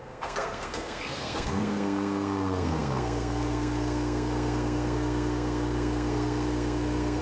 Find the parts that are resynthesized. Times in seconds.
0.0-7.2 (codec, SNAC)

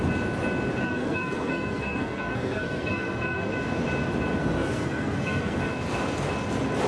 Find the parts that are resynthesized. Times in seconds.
0.8-3.5 (codec, SNAC); 4.4-5.7

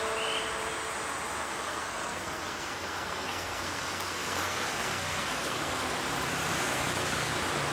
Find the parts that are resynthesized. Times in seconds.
1.4-5.9 (codec, SNAC); 6.6-7.3

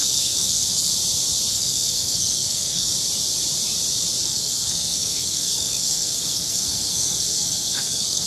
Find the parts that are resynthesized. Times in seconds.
0.0-0.9 (codec, SNAC); 1.5-2.9; 4.2-8.3